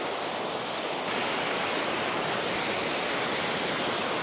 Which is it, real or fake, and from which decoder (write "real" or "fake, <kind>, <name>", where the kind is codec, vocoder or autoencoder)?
real